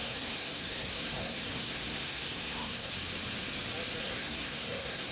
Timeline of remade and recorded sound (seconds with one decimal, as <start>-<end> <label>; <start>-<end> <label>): 0.0-2.9 remade; 2.9-4.0 recorded; 4.0-5.1 remade